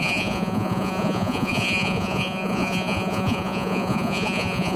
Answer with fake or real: fake